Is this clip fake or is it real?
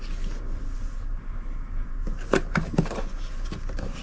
real